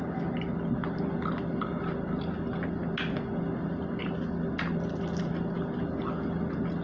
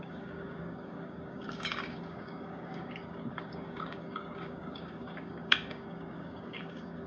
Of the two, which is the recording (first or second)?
first